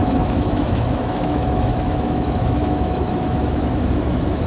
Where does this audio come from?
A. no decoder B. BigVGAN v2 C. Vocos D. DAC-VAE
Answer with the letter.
D